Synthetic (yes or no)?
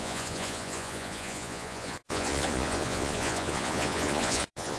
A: yes